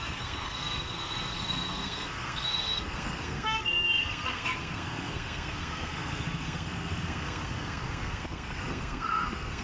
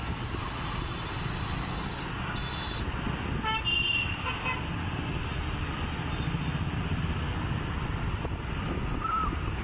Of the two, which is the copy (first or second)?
first